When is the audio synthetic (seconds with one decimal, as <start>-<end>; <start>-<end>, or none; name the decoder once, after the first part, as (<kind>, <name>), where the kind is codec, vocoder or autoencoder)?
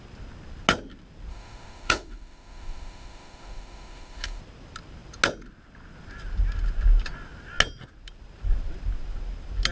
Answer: 1.3-4.4 (autoencoder, DAC-VAE)